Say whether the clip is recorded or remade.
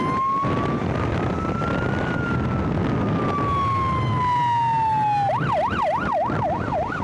recorded